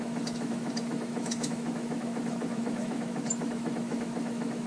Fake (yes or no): yes